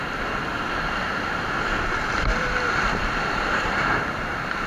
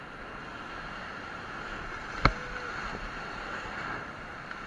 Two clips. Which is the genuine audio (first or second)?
second